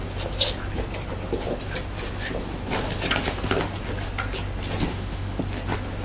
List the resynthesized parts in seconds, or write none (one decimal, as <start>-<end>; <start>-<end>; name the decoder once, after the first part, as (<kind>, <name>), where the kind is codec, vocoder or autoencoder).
4.9-5.4 (autoencoder, DAC-VAE)